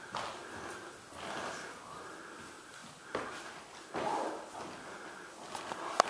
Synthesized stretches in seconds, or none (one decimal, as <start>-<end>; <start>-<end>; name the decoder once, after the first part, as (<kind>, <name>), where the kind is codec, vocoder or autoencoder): none